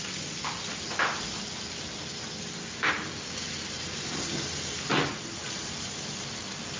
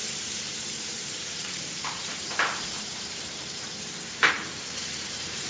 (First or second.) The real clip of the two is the first